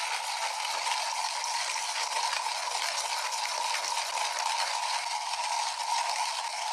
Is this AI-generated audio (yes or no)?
no